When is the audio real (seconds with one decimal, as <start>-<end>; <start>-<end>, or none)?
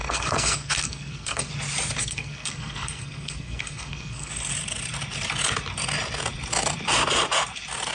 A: 1.5-2.0; 4.3-7.9